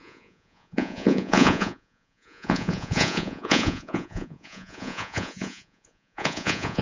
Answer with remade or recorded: remade